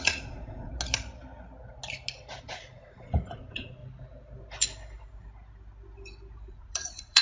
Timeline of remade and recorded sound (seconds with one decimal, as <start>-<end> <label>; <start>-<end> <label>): 0.0-0.7 remade; 0.7-2.4 recorded; 2.4-3.8 remade; 3.8-6.5 recorded; 6.5-7.2 remade

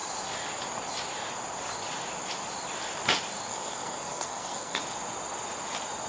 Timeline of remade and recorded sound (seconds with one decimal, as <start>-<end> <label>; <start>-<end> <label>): 0.0-3.5 recorded; 3.5-4.8 remade; 4.8-6.1 recorded